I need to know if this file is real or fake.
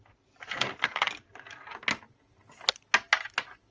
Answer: real